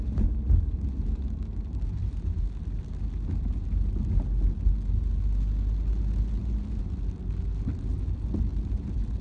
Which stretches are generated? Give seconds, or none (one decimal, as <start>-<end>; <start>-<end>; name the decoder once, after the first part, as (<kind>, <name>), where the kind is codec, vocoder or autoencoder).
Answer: 2.0-3.0 (vocoder, BigVGAN v2); 6.4-7.0; 8.5-9.2